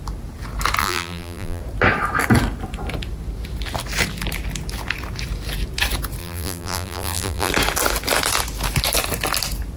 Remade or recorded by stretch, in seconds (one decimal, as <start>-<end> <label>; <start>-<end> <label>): 0.0-0.8 recorded; 0.8-1.6 remade; 1.6-6.2 recorded; 6.2-7.5 remade; 7.5-9.8 recorded